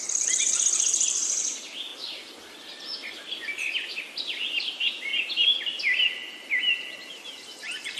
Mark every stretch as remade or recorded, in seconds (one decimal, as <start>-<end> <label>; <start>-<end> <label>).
0.0-1.9 remade; 1.9-4.2 recorded; 4.2-5.1 remade; 5.1-7.1 recorded; 7.1-8.0 remade